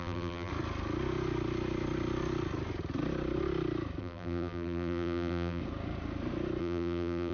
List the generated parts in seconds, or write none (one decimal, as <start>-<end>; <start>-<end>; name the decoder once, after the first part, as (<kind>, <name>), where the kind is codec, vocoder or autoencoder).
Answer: 0.0-0.5 (vocoder, BigVGAN v2); 4.0-5.6; 6.6-7.3